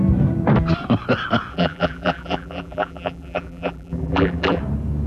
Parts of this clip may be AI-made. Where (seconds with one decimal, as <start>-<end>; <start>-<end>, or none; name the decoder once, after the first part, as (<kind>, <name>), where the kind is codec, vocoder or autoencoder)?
1.5-4.6 (vocoder, BigVGAN v2)